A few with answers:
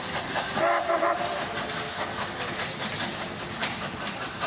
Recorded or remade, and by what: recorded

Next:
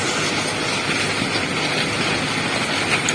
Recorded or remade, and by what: recorded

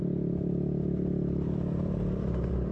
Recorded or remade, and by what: remade, vocoder, BigVGAN v2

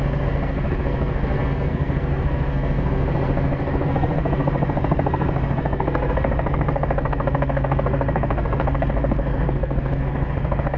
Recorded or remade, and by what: remade, codec, SNAC